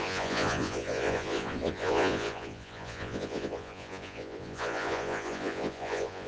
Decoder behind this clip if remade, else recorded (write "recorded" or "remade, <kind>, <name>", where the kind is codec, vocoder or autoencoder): remade, vocoder, Vocos